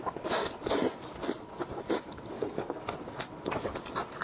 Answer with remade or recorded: recorded